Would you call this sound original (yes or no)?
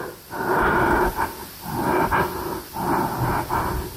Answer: yes